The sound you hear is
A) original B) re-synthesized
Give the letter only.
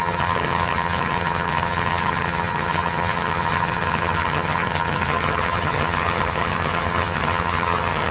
B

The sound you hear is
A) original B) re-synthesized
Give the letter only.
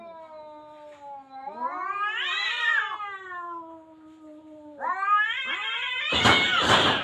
A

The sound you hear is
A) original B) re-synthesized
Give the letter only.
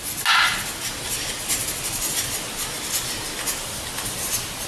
A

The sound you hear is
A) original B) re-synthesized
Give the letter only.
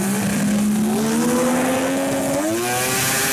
A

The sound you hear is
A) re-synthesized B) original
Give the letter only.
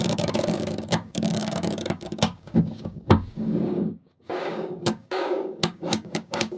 A